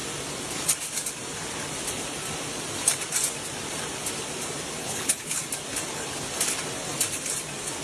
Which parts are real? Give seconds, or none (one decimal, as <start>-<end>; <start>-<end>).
0.0-4.8; 5.4-7.8